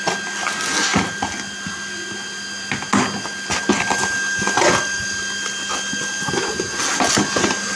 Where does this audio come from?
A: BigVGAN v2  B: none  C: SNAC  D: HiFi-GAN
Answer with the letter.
B